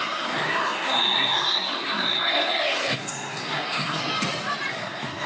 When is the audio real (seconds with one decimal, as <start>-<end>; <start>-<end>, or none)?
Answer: 4.0-4.7